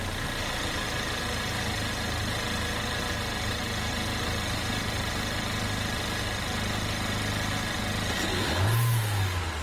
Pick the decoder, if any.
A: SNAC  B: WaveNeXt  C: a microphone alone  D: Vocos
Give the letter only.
C